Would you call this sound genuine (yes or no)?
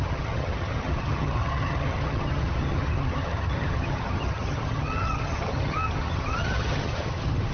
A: no